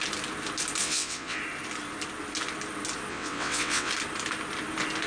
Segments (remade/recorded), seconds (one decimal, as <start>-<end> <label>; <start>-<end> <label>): 0.0-0.8 recorded; 0.8-1.4 remade; 1.4-3.1 recorded; 3.1-3.9 remade; 3.9-5.1 recorded